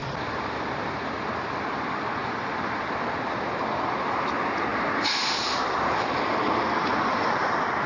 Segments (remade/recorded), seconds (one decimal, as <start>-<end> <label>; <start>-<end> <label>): 0.0-0.6 remade; 0.6-4.7 recorded; 4.7-6.4 remade; 6.4-7.9 recorded